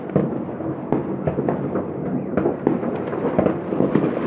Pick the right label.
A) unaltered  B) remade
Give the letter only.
A